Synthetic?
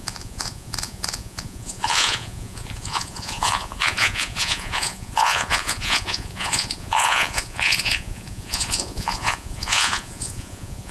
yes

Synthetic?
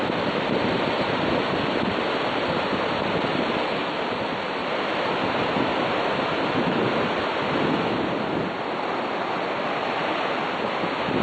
no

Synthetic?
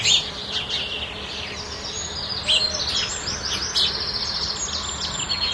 no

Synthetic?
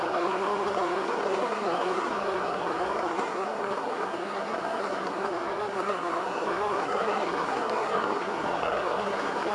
yes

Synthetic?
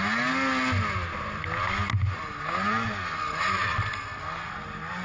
no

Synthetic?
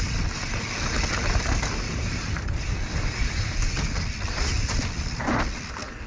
no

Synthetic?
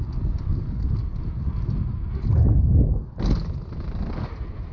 no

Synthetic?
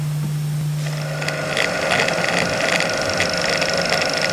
no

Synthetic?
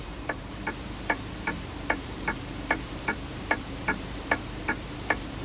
yes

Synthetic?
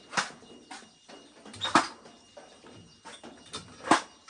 no